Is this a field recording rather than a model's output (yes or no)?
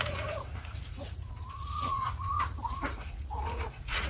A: no